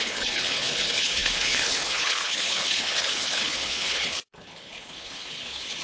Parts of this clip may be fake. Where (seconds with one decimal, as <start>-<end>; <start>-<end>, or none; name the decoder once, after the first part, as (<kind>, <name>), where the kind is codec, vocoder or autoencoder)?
0.0-5.8 (codec, HILCodec)